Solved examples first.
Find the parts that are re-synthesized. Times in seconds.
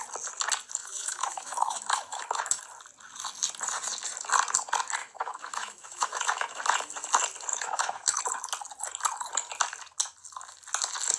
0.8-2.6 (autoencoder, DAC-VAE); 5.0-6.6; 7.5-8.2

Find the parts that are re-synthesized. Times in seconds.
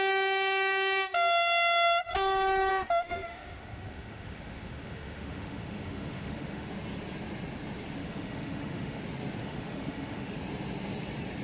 2.7-6.7 (autoencoder, DAC-VAE); 8.0-9.0; 9.4-10.4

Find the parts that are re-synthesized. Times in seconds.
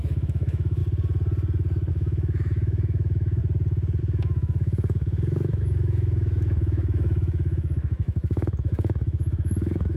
0.0-0.8 (autoencoder, DAC-VAE); 1.9-3.4; 4.0-10.0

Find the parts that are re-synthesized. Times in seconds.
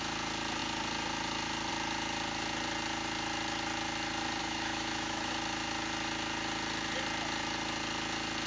4.4-5.3 (autoencoder, DAC-VAE)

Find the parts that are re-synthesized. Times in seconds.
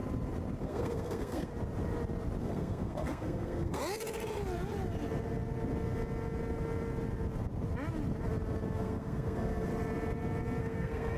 0.6-1.5 (codec, SNAC); 2.4-3.8; 8.7-9.7; 10.6-11.2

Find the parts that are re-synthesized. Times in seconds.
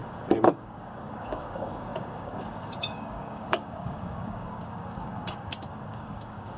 0.0-6.6 (codec, DAC)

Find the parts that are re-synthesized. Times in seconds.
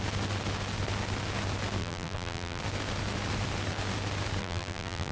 1.8-2.6 (vocoder, BigVGAN v2); 4.4-5.1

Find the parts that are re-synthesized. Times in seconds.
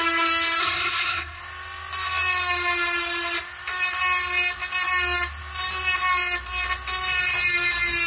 0.6-1.4 (codec, SNAC)